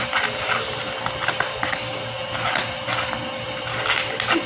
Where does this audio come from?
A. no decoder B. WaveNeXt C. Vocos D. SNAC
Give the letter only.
A